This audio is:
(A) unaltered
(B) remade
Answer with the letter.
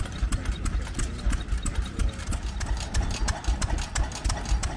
A